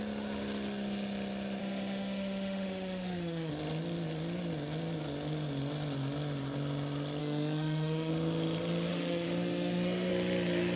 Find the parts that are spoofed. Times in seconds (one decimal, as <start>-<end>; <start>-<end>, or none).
1.6-3.5; 7.2-8.1; 8.9-10.1